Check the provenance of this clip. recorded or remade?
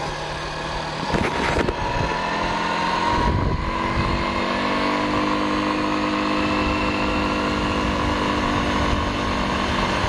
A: recorded